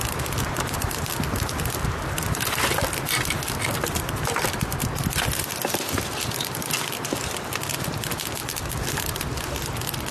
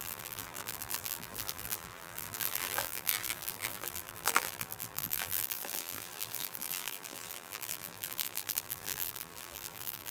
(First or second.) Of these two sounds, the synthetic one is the second